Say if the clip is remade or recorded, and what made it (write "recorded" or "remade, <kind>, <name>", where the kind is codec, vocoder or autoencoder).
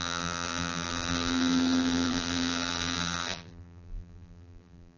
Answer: remade, vocoder, BigVGAN v2